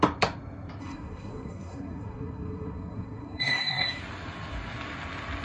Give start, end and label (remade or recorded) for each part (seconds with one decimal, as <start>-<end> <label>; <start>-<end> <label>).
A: 0.0-0.8 recorded; 0.8-4.0 remade; 4.0-5.4 recorded